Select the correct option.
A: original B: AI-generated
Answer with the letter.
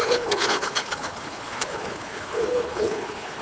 B